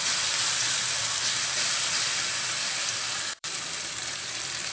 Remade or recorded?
remade